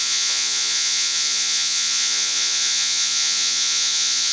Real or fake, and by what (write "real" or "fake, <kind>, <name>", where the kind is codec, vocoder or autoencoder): fake, vocoder, Vocos